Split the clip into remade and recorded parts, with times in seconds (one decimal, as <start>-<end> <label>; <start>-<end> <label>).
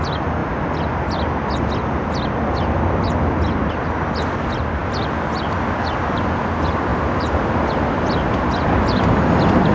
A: 0.0-9.7 recorded